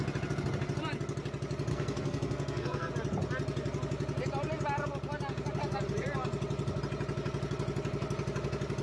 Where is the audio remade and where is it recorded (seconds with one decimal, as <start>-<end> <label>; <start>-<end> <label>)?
0.0-1.7 recorded; 1.7-2.9 remade; 2.9-8.8 recorded